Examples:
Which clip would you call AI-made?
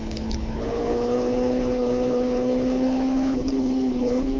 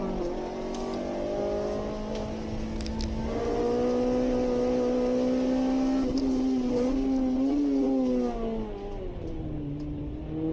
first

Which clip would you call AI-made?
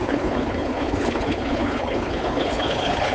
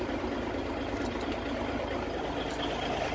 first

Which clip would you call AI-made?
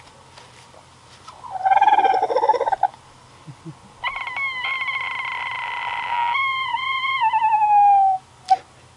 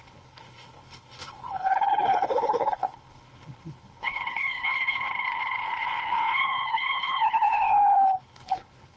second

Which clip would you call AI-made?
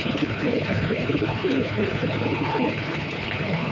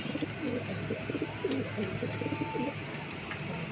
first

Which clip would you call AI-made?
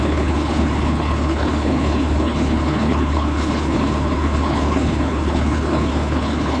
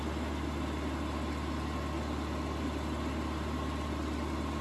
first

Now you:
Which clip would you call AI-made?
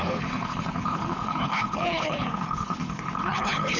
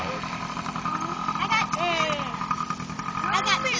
first